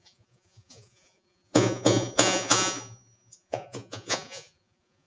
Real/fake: fake